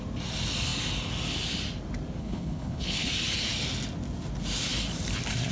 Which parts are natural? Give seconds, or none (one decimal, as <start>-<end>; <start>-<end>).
0.0-2.2; 3.1-5.5